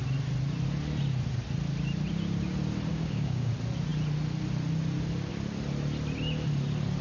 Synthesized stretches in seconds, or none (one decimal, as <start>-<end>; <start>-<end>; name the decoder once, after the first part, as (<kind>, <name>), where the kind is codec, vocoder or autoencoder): 2.9-3.5 (codec, DAC)